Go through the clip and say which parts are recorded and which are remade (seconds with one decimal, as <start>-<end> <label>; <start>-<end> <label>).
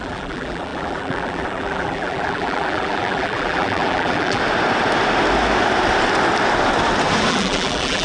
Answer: 0.0-4.4 remade; 4.4-7.3 recorded; 7.3-8.0 remade